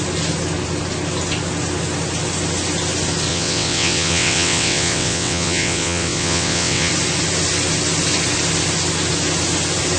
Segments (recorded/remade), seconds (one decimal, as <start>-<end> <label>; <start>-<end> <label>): 0.0-3.3 recorded; 3.3-6.9 remade; 6.9-10.0 recorded